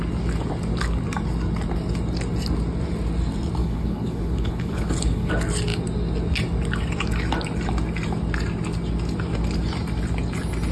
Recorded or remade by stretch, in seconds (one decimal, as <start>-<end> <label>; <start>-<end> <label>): 0.0-3.6 recorded; 3.6-5.3 remade; 5.3-10.7 recorded